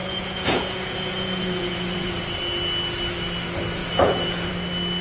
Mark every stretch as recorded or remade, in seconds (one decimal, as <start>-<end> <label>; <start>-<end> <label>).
0.0-2.2 remade; 2.2-3.8 recorded; 3.8-4.5 remade; 4.5-5.0 recorded